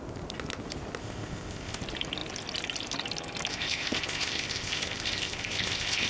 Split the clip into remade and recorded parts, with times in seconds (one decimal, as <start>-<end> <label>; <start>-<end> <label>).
0.0-1.0 recorded; 1.0-1.8 remade; 1.8-3.5 recorded; 3.5-6.1 remade